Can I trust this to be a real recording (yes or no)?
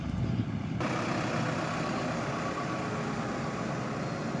yes